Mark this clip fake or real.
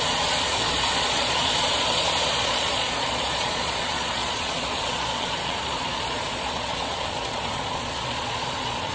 fake